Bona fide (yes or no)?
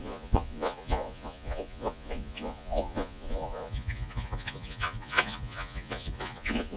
no